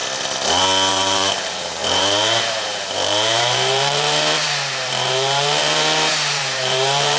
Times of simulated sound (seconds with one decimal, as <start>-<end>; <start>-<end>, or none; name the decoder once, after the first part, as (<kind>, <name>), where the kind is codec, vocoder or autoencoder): 0.9-7.2 (vocoder, BigVGAN v2)